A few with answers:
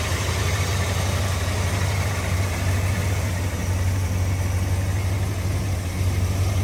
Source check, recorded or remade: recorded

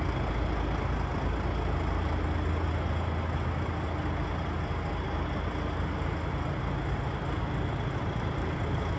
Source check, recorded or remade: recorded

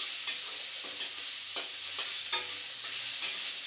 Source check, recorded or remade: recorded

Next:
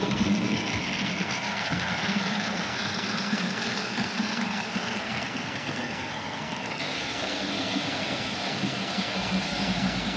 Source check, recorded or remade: remade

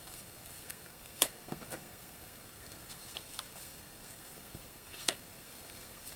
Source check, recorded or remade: remade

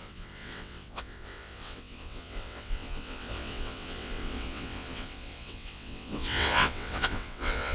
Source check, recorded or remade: remade